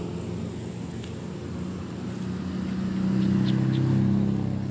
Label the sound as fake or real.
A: real